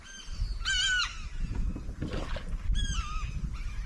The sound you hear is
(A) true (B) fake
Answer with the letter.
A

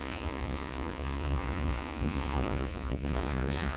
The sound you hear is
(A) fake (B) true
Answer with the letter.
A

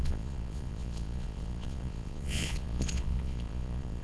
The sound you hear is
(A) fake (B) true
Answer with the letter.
A